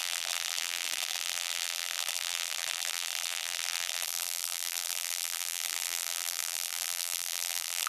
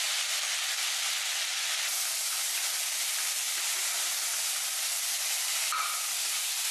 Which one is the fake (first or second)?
first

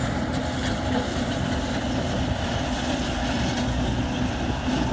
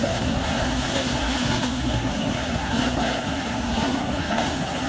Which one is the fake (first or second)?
second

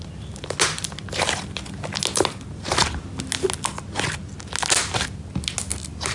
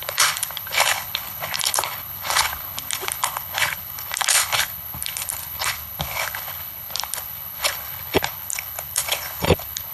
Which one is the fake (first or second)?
second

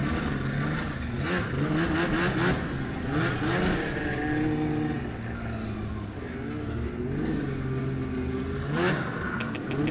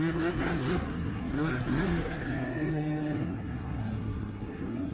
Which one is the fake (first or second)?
second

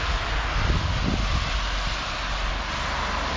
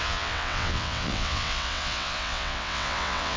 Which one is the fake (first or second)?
second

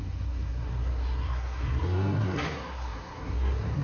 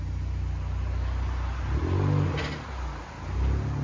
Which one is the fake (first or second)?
first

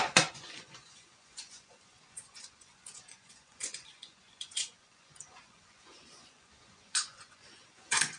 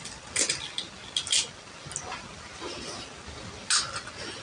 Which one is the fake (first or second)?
first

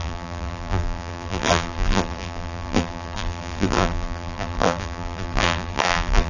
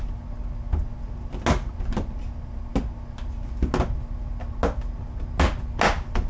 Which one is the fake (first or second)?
first